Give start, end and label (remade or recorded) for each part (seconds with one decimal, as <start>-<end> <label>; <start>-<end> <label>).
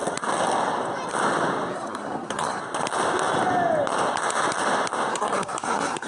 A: 0.0-1.7 recorded; 1.7-2.6 remade; 2.6-5.1 recorded; 5.1-6.1 remade